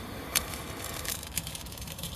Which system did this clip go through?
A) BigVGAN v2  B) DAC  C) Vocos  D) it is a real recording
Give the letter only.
A